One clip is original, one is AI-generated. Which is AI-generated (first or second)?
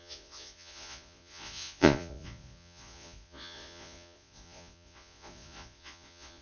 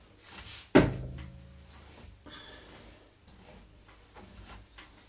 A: first